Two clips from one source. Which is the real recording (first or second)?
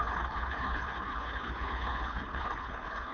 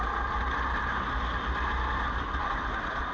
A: second